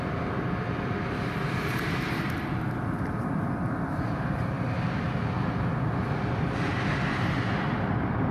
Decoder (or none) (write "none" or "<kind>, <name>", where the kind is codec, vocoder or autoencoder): none